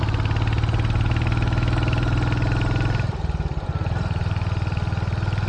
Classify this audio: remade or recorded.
recorded